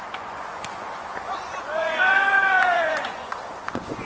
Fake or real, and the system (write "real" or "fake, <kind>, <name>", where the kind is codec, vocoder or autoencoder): fake, vocoder, Vocos